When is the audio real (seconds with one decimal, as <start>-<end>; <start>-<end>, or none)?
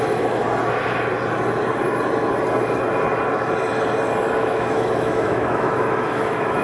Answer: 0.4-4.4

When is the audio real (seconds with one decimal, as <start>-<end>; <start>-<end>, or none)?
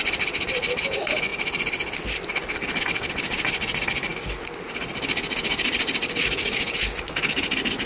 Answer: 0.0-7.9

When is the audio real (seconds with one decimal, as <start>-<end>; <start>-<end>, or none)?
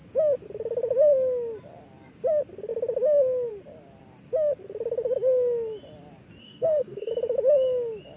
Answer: 0.0-6.4; 7.1-8.2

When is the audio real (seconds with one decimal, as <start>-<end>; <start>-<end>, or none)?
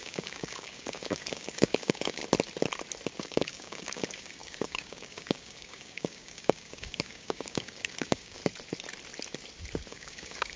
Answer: 2.2-3.2; 8.4-9.9